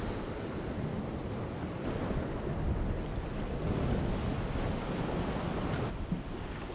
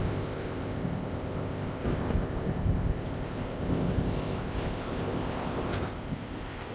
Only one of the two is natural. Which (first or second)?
first